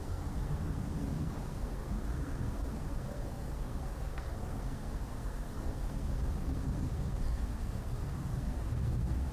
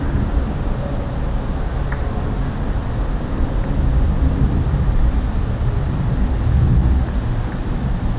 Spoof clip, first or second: first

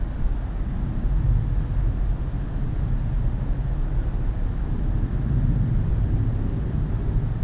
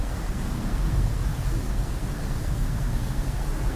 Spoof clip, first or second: second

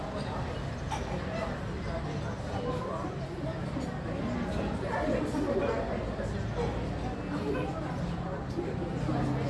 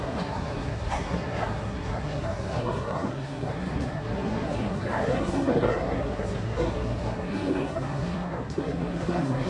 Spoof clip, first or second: second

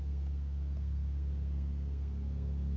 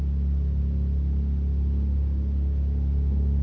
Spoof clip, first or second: first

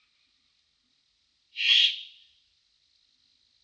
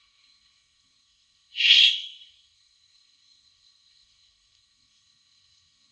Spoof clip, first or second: second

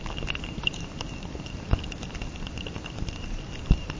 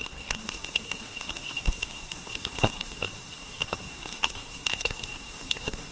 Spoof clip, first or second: second